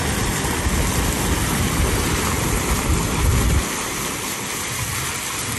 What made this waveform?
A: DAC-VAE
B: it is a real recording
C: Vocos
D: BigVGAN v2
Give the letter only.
B